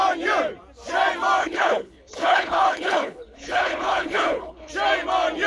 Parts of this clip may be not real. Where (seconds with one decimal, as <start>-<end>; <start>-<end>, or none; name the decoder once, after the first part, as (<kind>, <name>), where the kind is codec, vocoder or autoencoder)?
1.4-4.7 (codec, HILCodec)